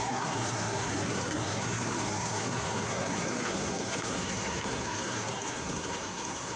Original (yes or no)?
no